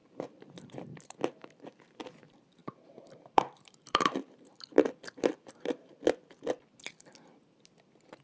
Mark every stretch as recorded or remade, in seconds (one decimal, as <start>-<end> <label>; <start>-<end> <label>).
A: 0.0-2.0 remade; 2.0-2.6 recorded; 2.6-5.9 remade; 5.9-8.2 recorded